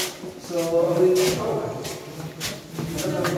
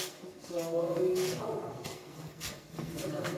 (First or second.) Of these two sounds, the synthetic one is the second